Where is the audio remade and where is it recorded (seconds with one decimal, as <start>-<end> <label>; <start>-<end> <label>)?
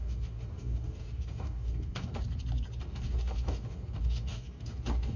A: 0.0-2.1 remade; 2.1-2.8 recorded; 2.8-5.2 remade